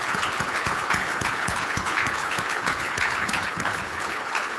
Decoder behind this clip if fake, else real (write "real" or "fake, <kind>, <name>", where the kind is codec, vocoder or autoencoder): fake, codec, HILCodec